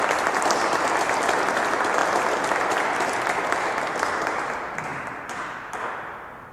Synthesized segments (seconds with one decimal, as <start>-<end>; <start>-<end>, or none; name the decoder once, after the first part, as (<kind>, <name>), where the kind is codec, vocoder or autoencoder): none